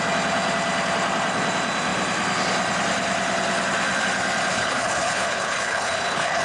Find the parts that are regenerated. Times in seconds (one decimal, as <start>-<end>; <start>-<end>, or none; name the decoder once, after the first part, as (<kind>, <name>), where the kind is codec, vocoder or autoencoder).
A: 4.5-6.4 (codec, HILCodec)